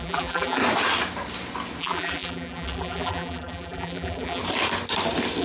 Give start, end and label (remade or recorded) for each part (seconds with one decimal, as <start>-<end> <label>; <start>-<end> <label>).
0.0-0.6 remade; 0.6-1.8 recorded; 1.8-4.4 remade; 4.4-5.4 recorded